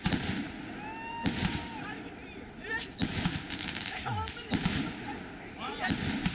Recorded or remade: recorded